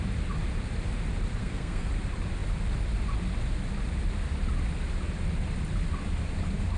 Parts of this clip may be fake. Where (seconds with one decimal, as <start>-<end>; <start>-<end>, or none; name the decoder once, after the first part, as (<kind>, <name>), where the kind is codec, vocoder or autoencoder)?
1.4-1.9 (codec, SNAC)